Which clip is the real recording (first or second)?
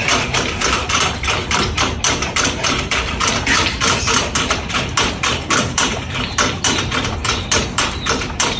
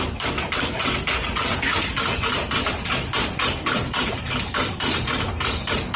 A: second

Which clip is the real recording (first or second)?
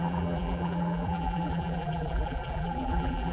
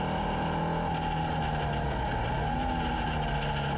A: second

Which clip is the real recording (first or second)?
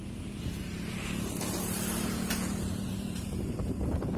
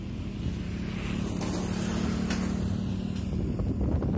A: second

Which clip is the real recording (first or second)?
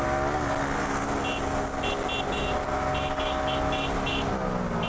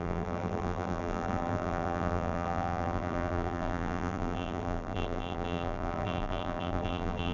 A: first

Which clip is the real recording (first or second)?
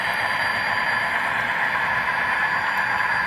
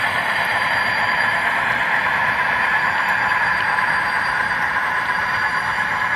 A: first